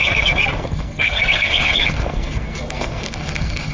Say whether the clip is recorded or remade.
remade